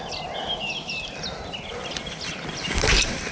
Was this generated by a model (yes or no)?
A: no